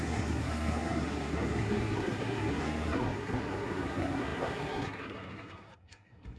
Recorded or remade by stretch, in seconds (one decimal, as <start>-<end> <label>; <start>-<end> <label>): 0.0-6.4 remade